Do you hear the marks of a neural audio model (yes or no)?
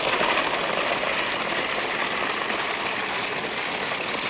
no